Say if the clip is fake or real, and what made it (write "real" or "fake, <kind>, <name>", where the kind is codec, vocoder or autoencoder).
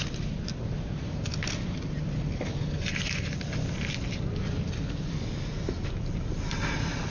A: real